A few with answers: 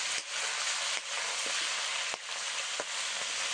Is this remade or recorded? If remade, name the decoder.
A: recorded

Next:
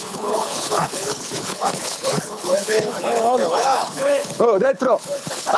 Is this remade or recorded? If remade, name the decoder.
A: remade, codec, HILCodec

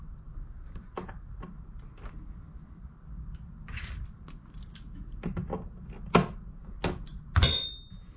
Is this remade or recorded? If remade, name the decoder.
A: recorded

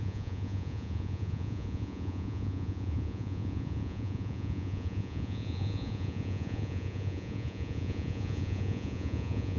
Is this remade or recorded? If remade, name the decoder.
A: remade, vocoder, Vocos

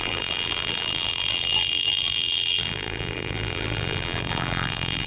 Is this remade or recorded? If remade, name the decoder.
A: remade, vocoder, BigVGAN v2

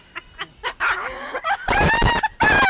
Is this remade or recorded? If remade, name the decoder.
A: recorded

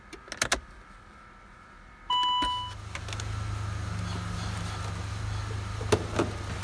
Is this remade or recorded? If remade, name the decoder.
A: recorded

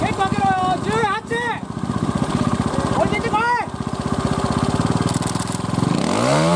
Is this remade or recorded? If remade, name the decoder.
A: recorded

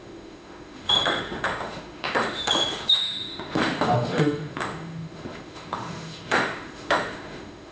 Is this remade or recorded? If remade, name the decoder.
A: remade, autoencoder, DAC-VAE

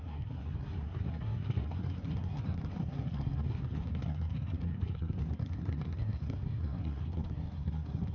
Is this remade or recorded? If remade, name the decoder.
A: remade, codec, SNAC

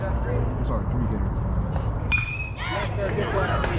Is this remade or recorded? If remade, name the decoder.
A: recorded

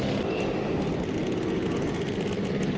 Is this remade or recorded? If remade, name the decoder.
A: recorded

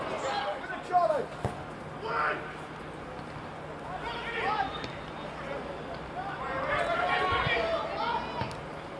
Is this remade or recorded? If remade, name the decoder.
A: recorded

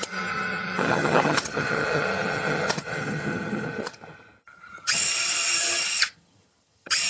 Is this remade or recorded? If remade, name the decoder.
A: remade, vocoder, HiFi-GAN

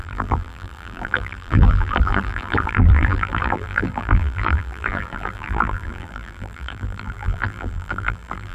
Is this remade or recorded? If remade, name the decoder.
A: remade, vocoder, BigVGAN v2